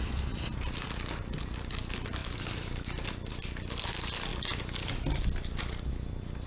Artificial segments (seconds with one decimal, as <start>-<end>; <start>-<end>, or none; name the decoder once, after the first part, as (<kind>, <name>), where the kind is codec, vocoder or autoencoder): none